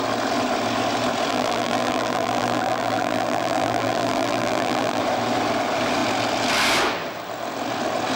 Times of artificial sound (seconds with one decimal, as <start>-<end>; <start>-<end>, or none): 1.3-5.0